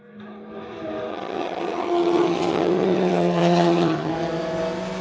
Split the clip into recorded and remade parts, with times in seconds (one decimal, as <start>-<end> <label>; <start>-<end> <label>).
0.0-1.1 recorded; 1.1-4.1 remade; 4.1-5.0 recorded